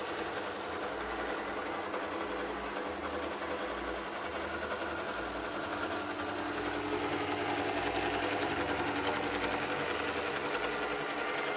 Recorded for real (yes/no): yes